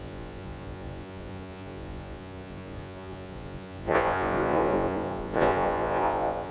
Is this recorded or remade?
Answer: remade